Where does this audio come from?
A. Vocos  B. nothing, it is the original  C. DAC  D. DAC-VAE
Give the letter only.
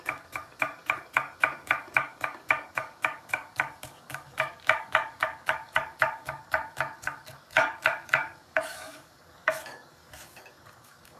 C